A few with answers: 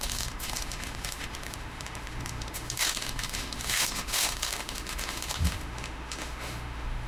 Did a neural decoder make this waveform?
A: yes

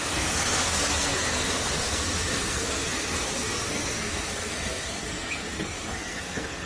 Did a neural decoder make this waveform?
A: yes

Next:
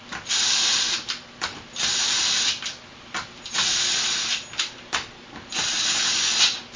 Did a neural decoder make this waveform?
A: no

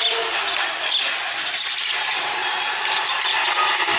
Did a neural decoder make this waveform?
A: no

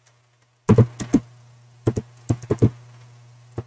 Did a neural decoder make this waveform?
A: no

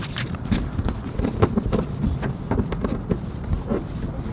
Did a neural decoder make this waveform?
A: no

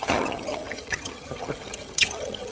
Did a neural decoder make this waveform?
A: yes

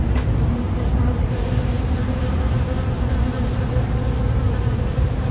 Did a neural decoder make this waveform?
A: yes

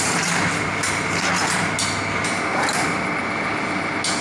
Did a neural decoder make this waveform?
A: no